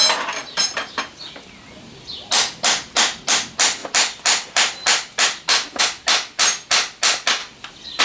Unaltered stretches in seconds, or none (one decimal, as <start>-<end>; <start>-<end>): 0.0-8.0